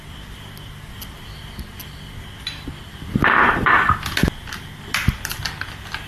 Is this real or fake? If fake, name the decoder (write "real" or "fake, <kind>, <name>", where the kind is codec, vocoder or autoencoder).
real